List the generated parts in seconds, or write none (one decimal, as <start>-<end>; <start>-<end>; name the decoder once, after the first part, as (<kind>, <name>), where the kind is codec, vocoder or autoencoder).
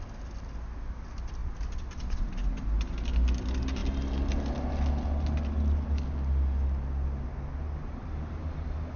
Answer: none